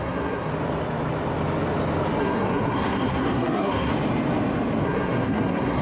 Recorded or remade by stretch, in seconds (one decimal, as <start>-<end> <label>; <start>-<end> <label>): 0.0-0.5 remade; 0.5-2.2 recorded; 2.2-3.9 remade; 3.9-4.8 recorded; 4.8-5.8 remade